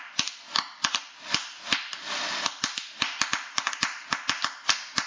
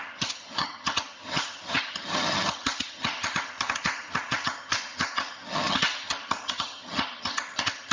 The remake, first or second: second